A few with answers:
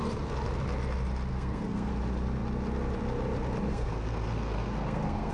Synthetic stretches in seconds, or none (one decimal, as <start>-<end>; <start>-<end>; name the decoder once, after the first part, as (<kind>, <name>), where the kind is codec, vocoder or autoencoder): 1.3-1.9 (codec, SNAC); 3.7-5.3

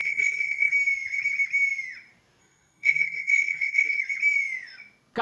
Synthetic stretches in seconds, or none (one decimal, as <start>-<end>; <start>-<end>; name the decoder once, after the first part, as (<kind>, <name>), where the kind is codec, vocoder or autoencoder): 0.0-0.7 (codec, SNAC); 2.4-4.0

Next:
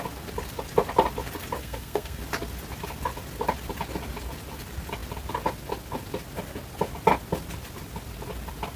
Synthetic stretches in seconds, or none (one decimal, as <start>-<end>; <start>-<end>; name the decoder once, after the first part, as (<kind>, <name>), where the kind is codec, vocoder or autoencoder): 1.6-2.2 (codec, SNAC)